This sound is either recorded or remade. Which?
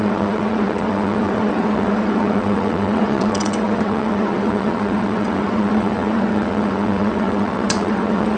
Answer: remade